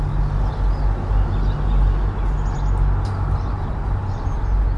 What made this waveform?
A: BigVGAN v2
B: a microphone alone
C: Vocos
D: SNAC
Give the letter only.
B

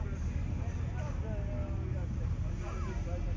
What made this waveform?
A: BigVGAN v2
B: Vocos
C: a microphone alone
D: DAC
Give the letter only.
C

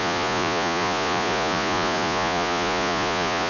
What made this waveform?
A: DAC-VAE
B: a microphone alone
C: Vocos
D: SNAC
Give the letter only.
C